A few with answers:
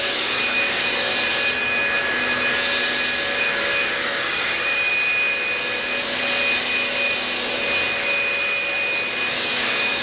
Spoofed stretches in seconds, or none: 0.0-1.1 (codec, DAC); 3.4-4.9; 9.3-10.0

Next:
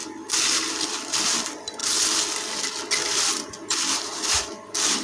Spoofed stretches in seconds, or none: none

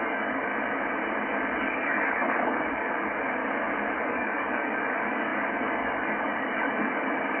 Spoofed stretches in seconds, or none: 0.0-0.5 (codec, DAC); 1.6-3.4; 4.0-7.4

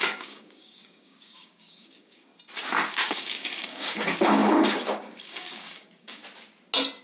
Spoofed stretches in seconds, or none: 0.0-2.3 (codec, DAC); 2.9-6.2

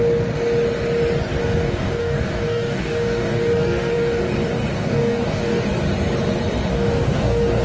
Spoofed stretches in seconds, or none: 1.4-4.2 (codec, DAC); 4.8-5.6; 6.7-7.6

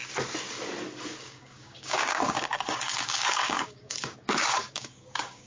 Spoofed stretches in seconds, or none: 1.2-5.5 (codec, DAC)